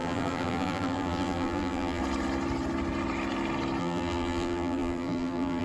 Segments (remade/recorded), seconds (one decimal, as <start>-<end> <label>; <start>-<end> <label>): 0.0-2.0 remade; 2.0-3.8 recorded; 3.8-5.6 remade